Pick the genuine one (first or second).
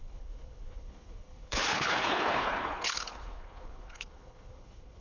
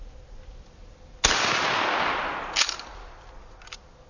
second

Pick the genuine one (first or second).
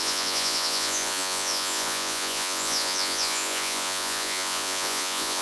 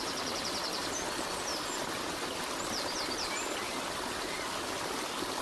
second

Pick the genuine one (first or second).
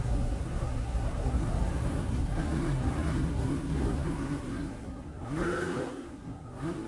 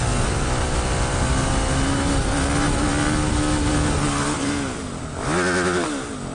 second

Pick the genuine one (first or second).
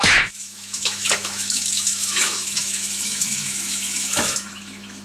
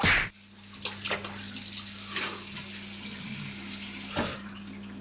second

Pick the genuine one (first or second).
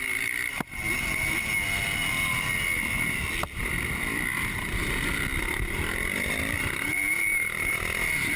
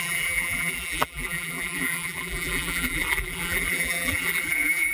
first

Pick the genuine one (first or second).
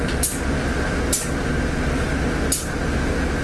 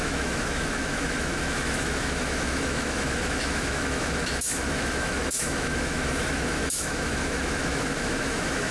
first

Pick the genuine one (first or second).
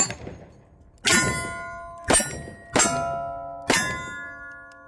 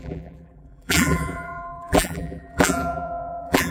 first